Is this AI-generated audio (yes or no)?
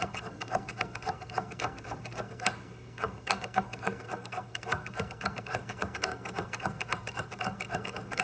yes